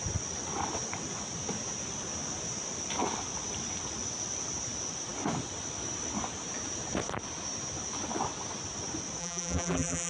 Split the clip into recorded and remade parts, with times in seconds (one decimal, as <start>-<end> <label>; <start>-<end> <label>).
0.0-9.2 recorded; 9.2-10.1 remade